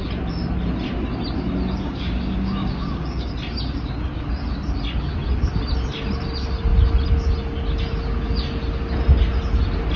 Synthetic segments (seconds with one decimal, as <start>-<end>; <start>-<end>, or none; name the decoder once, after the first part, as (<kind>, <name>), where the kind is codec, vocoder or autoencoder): 1.8-3.3 (codec, DAC)